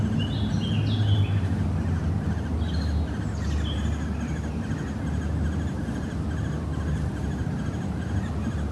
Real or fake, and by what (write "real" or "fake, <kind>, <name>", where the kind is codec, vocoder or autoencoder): real